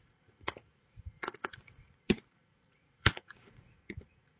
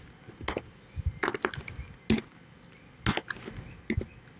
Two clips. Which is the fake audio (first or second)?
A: first